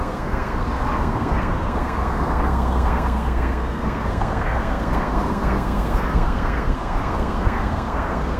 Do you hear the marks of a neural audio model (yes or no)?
yes